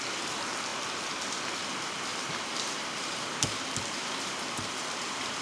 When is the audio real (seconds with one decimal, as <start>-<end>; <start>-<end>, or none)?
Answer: 0.0-2.1